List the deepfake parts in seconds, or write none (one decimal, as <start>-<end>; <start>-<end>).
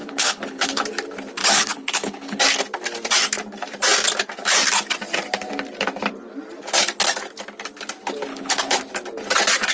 0.0-0.8; 1.4-2.4; 8.3-8.8